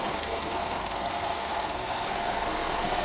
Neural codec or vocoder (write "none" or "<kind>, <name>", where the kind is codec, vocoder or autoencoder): codec, SNAC